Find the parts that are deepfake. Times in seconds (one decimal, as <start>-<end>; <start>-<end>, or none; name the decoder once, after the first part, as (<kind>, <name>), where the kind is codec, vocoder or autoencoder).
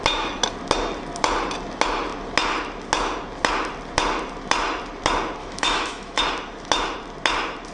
5.4-6.2 (autoencoder, DAC-VAE)